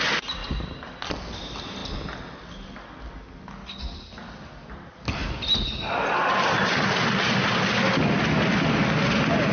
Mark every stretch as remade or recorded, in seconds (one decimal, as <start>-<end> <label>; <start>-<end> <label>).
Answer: 0.0-0.4 recorded; 0.4-0.9 remade; 0.9-9.5 recorded